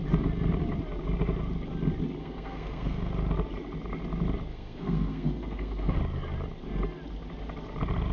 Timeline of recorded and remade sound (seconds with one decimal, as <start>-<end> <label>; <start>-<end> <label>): 0.0-2.2 recorded; 2.2-3.1 remade; 3.1-4.5 recorded; 4.5-6.0 remade; 6.0-8.1 recorded